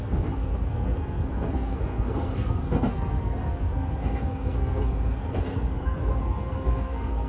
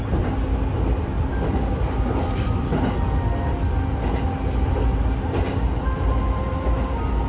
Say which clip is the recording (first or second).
second